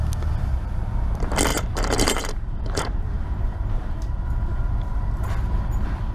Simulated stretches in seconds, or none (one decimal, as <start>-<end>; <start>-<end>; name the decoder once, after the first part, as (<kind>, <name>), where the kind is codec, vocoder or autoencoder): 1.5-5.2 (vocoder, BigVGAN v2)